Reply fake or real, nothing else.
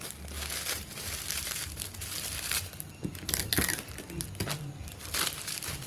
fake